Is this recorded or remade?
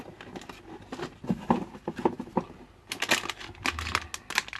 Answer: recorded